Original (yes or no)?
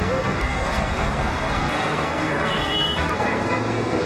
no